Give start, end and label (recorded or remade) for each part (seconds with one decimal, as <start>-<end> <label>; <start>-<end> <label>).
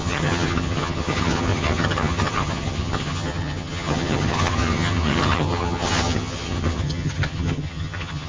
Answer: 0.0-8.3 remade